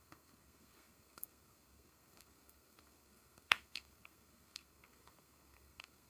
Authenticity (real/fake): fake